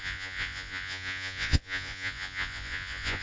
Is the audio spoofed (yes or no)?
yes